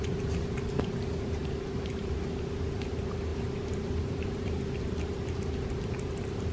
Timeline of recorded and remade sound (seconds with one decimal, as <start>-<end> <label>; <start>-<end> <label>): 0.0-3.3 remade; 3.3-4.0 recorded; 4.0-6.5 remade